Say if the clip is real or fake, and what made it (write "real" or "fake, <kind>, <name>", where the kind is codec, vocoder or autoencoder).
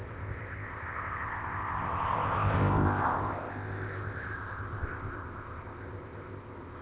fake, codec, ZipCodec